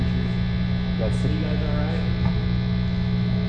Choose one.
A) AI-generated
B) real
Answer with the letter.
B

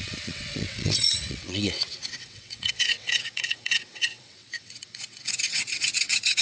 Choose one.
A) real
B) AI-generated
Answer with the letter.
B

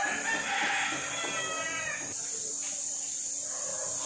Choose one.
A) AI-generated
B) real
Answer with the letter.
B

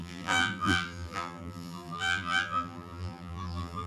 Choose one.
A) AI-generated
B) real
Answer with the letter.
A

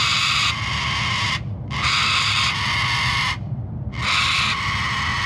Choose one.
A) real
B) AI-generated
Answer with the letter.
A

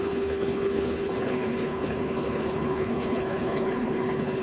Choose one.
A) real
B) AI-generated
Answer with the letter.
B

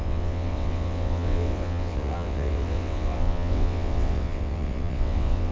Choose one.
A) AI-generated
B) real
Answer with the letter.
A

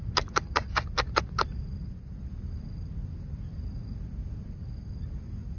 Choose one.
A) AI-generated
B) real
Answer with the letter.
B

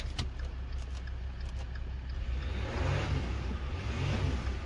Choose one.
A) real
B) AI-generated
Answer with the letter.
A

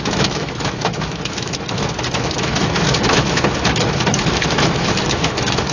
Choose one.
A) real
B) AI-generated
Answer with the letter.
B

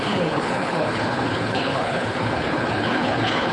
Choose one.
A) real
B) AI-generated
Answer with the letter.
B